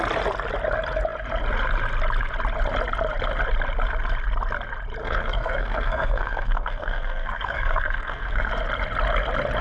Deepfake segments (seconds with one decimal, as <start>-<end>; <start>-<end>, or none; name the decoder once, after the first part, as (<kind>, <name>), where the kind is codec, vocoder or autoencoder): 5.0-8.5 (codec, SNAC)